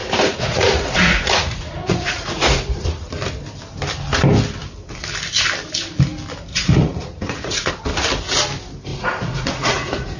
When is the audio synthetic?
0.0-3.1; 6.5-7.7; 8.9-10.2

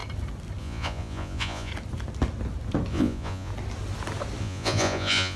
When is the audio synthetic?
0.6-1.7; 2.9-3.5; 4.4-5.4

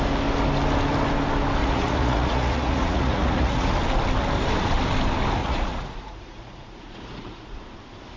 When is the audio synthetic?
1.6-3.7; 5.4-7.6

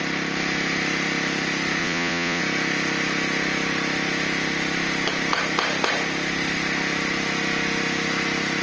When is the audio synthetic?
1.8-2.4

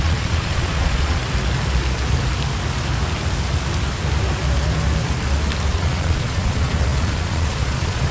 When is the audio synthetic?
0.0-1.2; 5.7-8.1

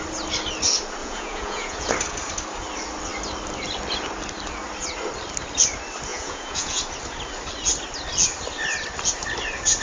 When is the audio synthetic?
1.0-1.9; 6.1-6.8